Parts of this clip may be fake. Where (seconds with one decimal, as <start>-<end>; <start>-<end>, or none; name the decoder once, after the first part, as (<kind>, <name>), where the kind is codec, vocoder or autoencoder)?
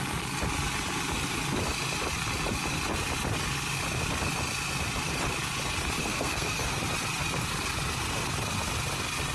6.0-6.8 (codec, SNAC)